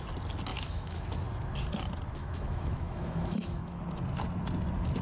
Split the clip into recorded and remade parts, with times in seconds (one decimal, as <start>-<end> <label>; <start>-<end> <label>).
0.0-0.5 recorded; 0.5-1.1 remade; 1.1-2.2 recorded; 2.2-3.8 remade; 3.8-5.0 recorded